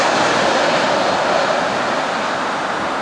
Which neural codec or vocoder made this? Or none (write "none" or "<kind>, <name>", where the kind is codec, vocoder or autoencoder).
none